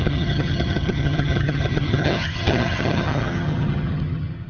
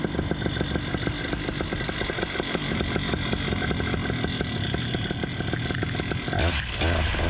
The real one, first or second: second